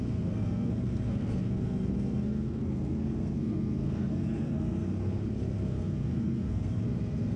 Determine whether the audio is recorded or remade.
remade